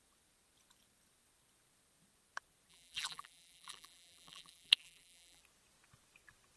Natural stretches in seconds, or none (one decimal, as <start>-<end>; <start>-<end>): 0.0-2.7; 5.4-6.6